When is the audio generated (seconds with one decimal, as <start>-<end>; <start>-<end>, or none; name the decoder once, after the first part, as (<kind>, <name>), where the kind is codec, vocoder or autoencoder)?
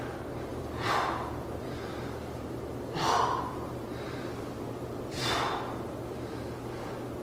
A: 0.5-1.3 (vocoder, BigVGAN v2); 3.5-5.2